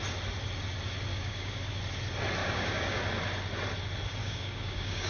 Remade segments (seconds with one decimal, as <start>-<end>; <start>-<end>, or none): 1.1-1.8; 2.4-3.0; 4.2-5.1

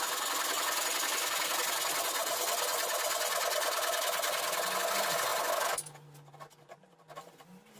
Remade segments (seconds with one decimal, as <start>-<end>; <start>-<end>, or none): none

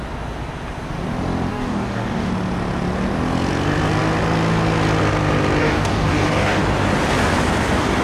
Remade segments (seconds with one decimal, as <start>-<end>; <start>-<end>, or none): 1.5-2.3; 5.6-6.6